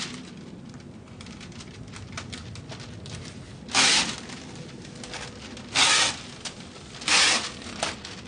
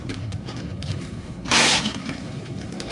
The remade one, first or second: second